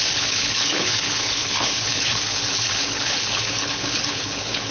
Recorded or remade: remade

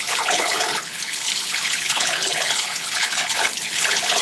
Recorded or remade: remade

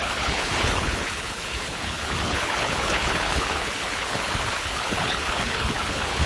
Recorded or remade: remade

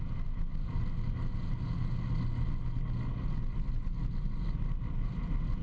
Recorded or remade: recorded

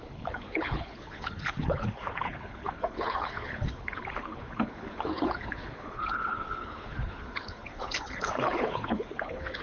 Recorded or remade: remade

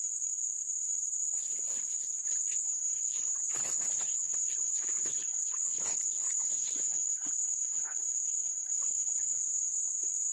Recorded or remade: remade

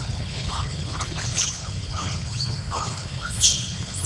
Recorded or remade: remade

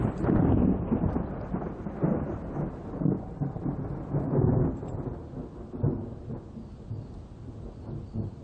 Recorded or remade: recorded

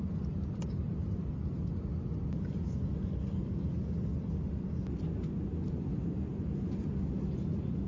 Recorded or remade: recorded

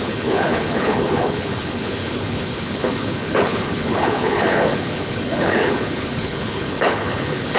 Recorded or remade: remade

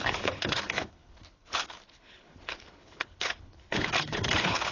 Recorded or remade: remade